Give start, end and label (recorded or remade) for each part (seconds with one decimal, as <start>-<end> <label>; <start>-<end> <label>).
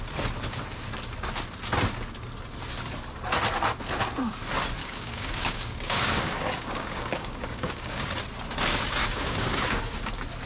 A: 0.0-4.8 recorded; 4.8-8.0 remade; 8.0-9.0 recorded; 9.0-9.8 remade; 9.8-10.5 recorded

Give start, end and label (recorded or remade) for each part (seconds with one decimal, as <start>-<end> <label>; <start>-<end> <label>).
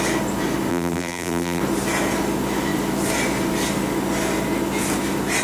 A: 0.0-0.7 recorded; 0.7-1.6 remade; 1.6-5.4 recorded